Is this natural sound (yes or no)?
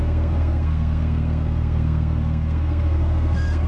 no